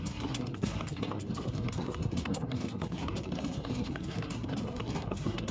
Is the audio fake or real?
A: fake